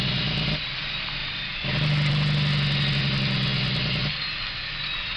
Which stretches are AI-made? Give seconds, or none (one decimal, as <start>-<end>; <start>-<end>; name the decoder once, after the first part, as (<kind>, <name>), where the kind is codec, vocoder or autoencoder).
none